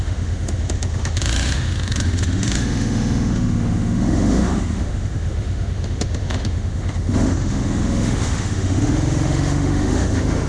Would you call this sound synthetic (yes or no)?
yes